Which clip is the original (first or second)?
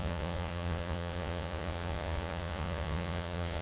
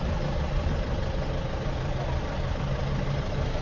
second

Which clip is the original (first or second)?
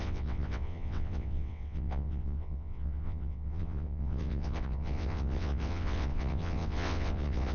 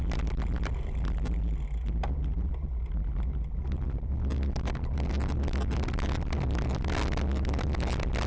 second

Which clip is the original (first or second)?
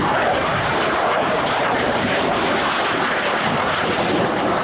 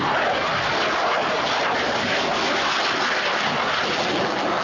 second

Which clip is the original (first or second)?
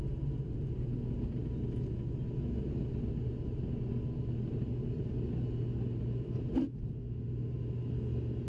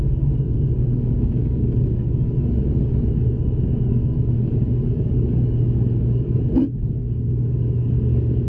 first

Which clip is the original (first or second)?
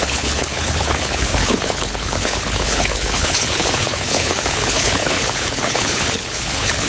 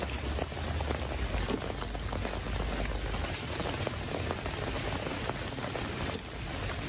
second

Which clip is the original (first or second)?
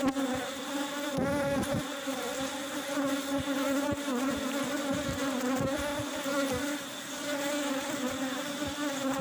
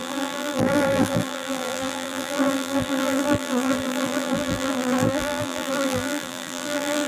first